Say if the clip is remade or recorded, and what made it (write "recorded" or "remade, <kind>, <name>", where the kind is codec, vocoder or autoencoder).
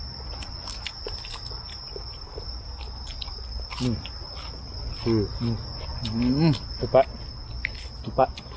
recorded